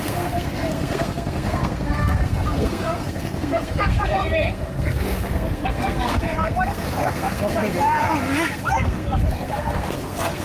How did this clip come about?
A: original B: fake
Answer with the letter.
B